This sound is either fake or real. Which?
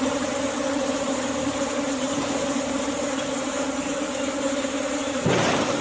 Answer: fake